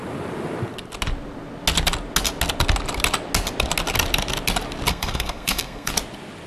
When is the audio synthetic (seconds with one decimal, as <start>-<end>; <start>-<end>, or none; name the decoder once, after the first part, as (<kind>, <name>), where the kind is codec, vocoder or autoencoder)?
4.9-5.9 (codec, SNAC)